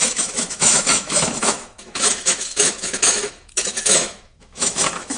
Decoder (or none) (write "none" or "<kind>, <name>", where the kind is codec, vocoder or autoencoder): autoencoder, DAC-VAE